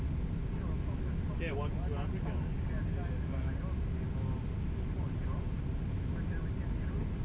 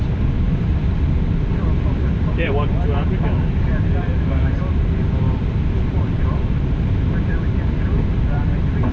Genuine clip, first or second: first